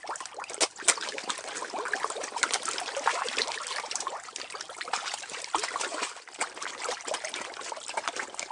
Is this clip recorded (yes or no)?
yes